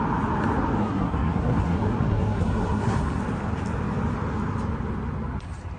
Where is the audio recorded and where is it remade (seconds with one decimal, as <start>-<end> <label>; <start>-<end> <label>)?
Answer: 0.0-0.8 recorded; 0.8-3.2 remade; 3.2-5.8 recorded

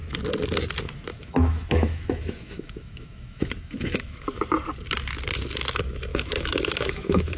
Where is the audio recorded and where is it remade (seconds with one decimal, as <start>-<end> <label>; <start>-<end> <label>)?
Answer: 0.0-1.1 recorded; 1.1-4.2 remade; 4.2-6.1 recorded; 6.1-7.4 remade

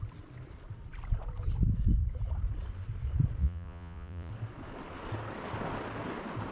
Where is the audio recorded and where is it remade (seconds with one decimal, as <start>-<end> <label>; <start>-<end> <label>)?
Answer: 0.0-3.4 recorded; 3.4-4.3 remade; 4.3-6.5 recorded

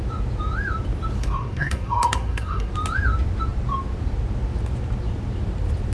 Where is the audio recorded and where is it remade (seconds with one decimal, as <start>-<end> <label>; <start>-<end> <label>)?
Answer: 0.0-1.2 recorded; 1.2-2.7 remade; 2.7-5.9 recorded